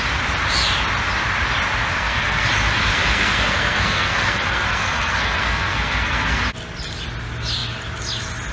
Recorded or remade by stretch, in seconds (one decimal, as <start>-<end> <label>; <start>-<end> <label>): 0.0-1.9 recorded; 1.9-2.5 remade; 2.5-2.9 recorded; 2.9-6.4 remade; 6.4-8.5 recorded